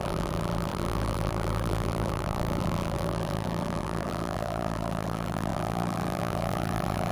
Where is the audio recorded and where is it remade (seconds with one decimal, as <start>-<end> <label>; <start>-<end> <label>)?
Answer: 0.0-7.1 remade